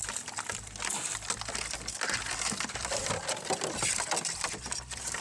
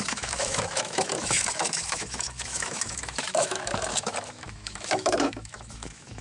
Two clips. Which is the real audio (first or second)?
first